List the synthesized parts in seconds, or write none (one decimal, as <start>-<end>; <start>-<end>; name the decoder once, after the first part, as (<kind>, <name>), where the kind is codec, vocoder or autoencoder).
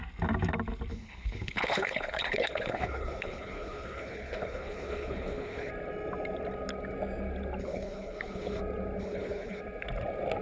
0.9-5.7 (codec, HILCodec); 7.6-8.6; 9.0-9.6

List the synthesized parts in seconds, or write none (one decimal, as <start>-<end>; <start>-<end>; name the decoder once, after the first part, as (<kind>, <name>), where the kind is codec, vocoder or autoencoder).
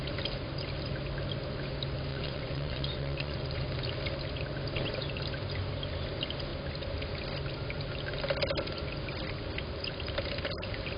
2.1-3.7 (vocoder, Vocos)